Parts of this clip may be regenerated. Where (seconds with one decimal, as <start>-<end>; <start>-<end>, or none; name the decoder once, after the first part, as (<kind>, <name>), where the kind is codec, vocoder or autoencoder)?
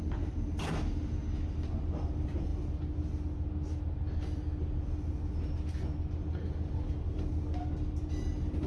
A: none